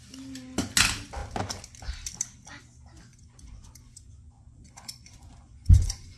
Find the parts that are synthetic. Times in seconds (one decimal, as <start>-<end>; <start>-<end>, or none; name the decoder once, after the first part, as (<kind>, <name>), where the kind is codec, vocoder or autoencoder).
3.1-6.2 (vocoder, Vocos)